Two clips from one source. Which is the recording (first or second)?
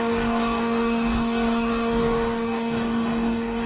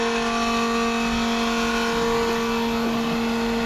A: second